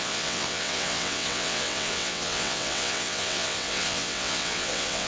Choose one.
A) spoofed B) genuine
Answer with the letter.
A